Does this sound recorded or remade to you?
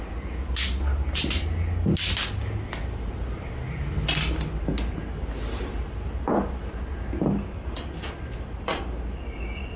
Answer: recorded